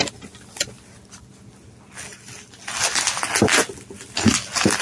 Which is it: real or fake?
real